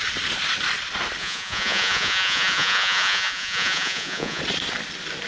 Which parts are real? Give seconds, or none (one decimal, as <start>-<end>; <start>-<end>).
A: 0.0-1.2; 4.4-5.3